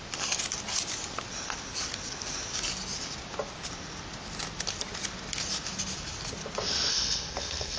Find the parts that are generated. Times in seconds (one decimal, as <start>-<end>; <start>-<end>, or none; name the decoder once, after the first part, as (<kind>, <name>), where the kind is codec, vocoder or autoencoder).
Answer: 6.9-7.8 (codec, SNAC)